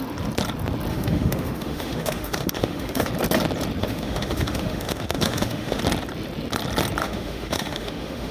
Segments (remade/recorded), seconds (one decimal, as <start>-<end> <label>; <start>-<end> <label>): 0.0-0.9 recorded; 0.9-3.1 remade; 3.1-3.8 recorded; 3.8-5.8 remade; 5.8-7.0 recorded; 7.0-8.3 remade